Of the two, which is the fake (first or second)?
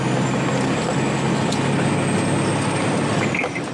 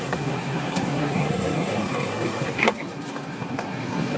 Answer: second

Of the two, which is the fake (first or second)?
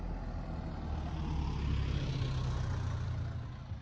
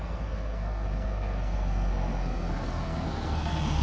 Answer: second